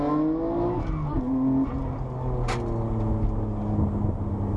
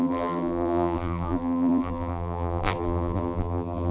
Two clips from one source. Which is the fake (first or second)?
second